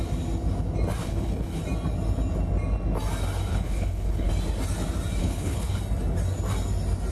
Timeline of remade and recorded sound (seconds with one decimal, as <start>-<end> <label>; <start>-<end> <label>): 0.0-1.0 recorded; 1.0-1.6 remade; 1.6-3.5 recorded; 3.5-4.3 remade; 4.3-5.2 recorded; 5.2-5.8 remade; 5.8-7.1 recorded